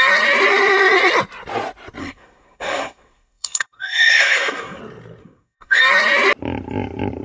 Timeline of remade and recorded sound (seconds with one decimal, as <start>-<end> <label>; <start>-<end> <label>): 0.0-2.0 recorded; 2.0-4.8 remade; 4.8-5.2 recorded; 5.2-5.8 remade; 5.8-7.2 recorded